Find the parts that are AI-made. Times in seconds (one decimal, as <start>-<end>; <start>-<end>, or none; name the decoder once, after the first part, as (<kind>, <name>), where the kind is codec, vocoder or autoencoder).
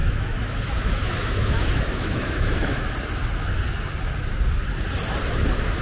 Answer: 0.0-2.8 (autoencoder, DAC-VAE)